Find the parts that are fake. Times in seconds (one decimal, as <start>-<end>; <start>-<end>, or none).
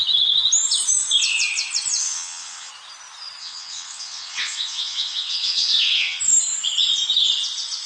2.0-2.7; 3.4-6.2